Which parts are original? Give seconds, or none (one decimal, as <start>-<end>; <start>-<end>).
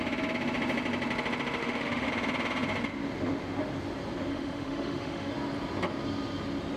0.0-1.6; 2.1-4.3; 5.3-6.8